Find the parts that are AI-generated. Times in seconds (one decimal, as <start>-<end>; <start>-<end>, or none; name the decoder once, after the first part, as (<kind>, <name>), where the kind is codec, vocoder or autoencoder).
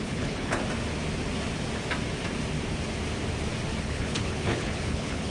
0.0-0.6 (codec, HILCodec); 3.8-5.3